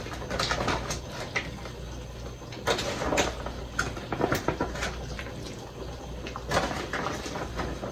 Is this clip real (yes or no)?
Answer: yes